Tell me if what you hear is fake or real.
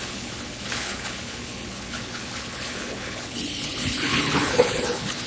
fake